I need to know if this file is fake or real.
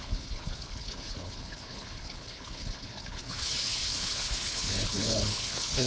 fake